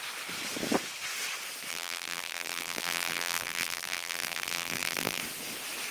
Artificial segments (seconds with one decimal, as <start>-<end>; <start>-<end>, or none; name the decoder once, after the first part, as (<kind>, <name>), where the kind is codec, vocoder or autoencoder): 1.7-5.2 (vocoder, BigVGAN v2)